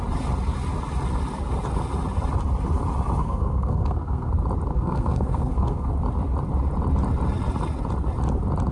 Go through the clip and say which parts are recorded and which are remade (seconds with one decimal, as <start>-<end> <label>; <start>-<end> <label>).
0.0-3.2 recorded; 3.2-4.3 remade; 4.3-4.7 recorded; 4.7-5.9 remade; 5.9-8.7 recorded